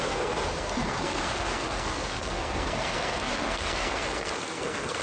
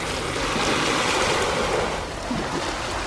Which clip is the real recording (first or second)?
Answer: second